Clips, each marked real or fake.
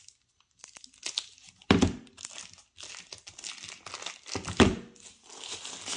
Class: real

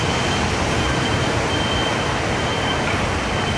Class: real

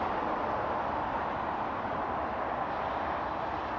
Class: fake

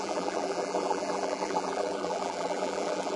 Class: fake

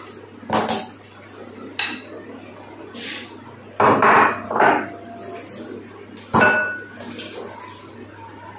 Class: real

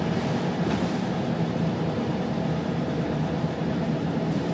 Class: fake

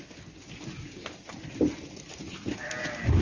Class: real